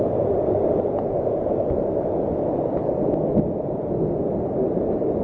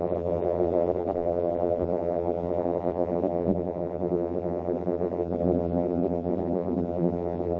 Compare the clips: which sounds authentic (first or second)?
first